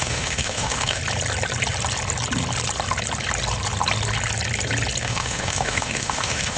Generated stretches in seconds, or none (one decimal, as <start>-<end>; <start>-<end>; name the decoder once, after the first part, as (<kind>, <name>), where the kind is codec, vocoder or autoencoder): 0.0-1.0 (autoencoder, DAC-VAE); 5.0-6.6